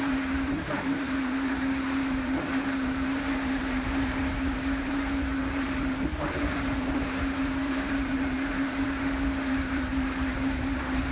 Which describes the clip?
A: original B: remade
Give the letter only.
B